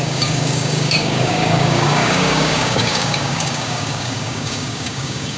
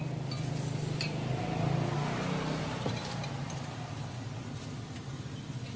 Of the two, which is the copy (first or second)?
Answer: first